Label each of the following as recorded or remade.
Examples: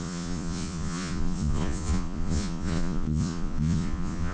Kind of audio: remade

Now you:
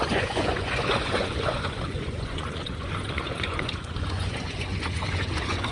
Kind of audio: remade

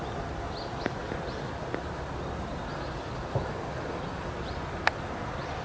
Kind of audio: recorded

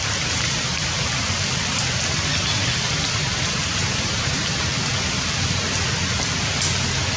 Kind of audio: recorded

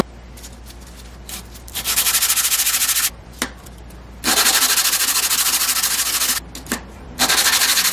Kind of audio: recorded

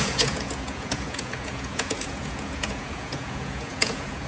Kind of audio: remade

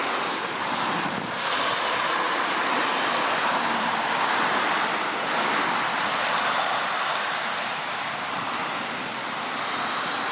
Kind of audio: recorded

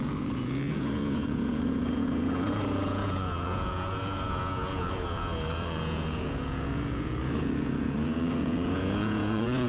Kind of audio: remade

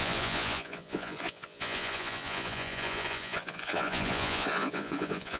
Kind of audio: remade